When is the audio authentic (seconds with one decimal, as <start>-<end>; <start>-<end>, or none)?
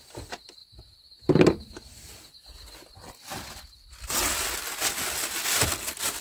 0.0-6.2